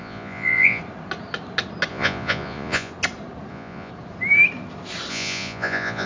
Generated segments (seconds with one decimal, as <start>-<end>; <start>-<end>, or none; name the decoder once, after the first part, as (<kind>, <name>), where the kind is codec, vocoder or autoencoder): 0.0-0.8 (vocoder, Vocos); 1.9-2.9; 3.5-3.9; 5.1-6.1